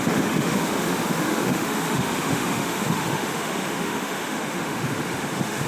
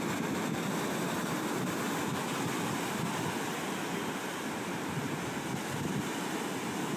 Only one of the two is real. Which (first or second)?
second